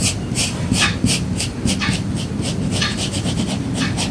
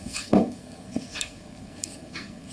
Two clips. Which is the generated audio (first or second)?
second